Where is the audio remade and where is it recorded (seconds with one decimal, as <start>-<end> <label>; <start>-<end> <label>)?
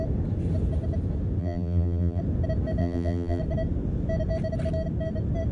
0.0-1.4 recorded; 1.4-2.2 remade; 2.2-2.8 recorded; 2.8-3.4 remade; 3.4-5.5 recorded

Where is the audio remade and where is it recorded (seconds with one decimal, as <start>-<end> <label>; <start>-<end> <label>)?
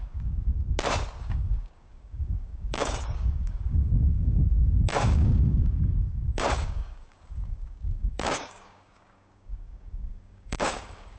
0.0-0.5 remade; 0.5-1.2 recorded; 1.2-11.2 remade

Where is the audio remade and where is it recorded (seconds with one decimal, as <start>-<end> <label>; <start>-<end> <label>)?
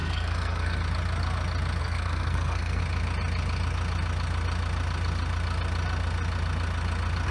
0.0-0.8 remade; 0.8-1.8 recorded; 1.8-2.8 remade; 2.8-7.3 recorded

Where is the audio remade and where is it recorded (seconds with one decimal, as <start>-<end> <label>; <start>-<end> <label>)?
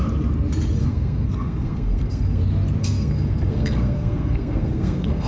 0.0-0.8 recorded; 0.8-2.4 remade; 2.4-2.8 recorded; 2.8-5.3 remade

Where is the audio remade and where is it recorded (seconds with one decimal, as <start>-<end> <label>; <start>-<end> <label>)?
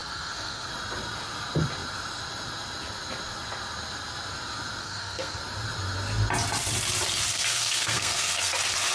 0.0-0.7 remade; 0.7-4.8 recorded; 4.8-5.4 remade; 5.4-7.3 recorded; 7.3-8.5 remade; 8.5-8.9 recorded